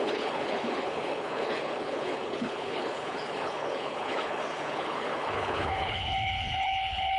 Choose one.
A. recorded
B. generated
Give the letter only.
B